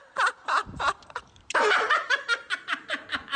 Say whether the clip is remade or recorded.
remade